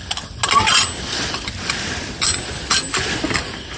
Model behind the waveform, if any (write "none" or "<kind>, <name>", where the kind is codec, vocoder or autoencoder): none